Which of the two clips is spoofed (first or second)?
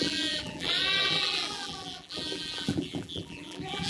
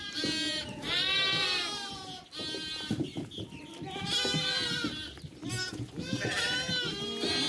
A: first